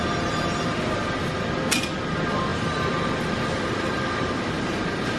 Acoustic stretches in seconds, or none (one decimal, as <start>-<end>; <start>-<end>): 0.0-2.5; 4.5-5.2